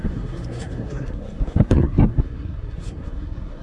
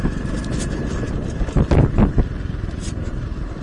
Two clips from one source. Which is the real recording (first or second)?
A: second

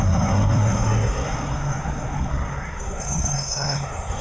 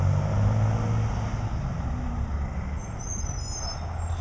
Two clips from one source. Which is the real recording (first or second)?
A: second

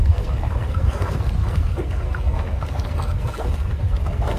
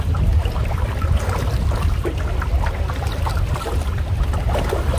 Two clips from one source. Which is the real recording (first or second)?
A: second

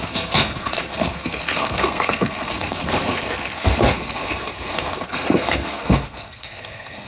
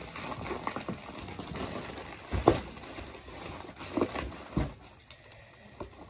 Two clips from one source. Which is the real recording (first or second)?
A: second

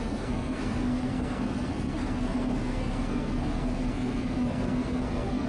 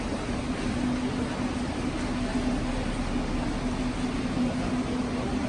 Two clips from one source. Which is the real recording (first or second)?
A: second